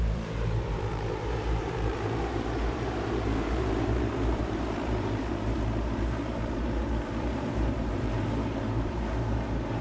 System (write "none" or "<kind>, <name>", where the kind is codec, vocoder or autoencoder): vocoder, BigVGAN v2